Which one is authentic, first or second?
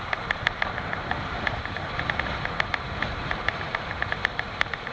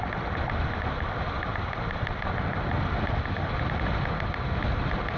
second